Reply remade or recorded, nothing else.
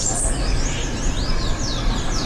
recorded